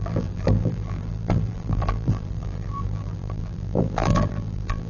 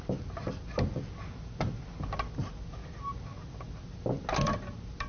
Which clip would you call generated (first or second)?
first